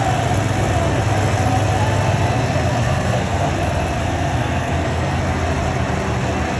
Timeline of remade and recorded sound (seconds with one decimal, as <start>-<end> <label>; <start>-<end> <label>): 0.0-2.8 recorded; 2.8-3.5 remade; 3.5-4.0 recorded; 4.0-5.2 remade; 5.2-6.6 recorded